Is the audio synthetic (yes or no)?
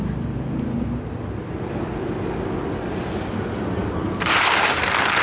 no